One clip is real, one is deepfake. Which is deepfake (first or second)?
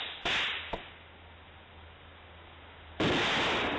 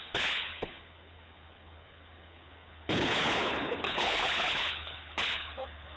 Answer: second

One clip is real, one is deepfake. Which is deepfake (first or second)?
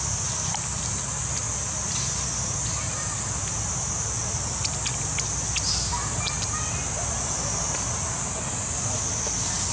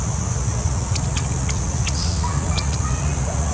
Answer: second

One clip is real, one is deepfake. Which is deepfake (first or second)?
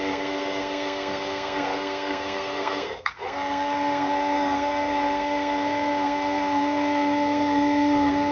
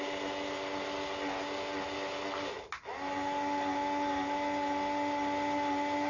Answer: first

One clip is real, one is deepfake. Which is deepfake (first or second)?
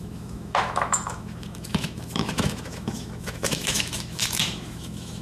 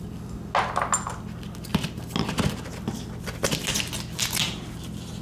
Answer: first